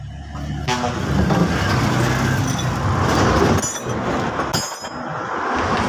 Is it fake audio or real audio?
real